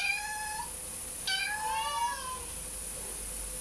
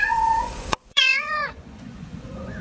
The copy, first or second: second